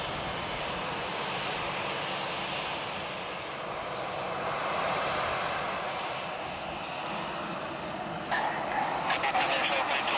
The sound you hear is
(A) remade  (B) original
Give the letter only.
B